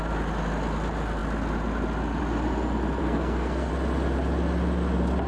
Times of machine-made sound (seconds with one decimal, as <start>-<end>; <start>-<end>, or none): 3.0-3.7

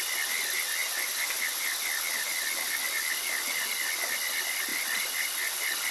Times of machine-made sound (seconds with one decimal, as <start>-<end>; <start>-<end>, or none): none

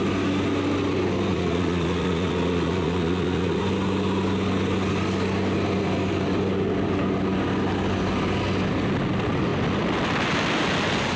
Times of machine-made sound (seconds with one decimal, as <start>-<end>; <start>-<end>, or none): 1.3-3.6